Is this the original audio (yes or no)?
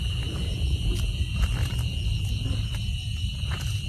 yes